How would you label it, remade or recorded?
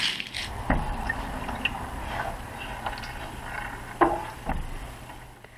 remade